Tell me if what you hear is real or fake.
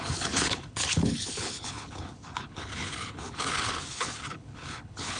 fake